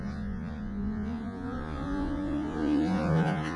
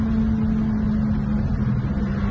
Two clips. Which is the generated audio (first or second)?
first